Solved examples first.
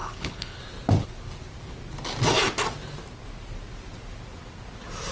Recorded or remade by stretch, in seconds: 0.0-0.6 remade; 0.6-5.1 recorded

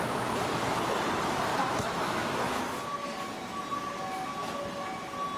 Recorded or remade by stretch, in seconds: 0.0-1.5 recorded; 1.5-2.6 remade; 2.6-5.4 recorded

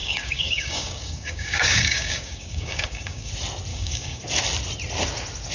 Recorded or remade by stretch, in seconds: 0.0-3.3 remade; 3.3-3.7 recorded; 3.7-4.2 remade; 4.2-5.5 recorded

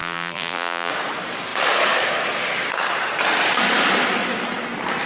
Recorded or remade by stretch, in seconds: 0.0-0.9 remade; 0.9-5.1 recorded